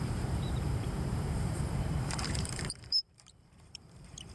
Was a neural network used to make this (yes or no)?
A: yes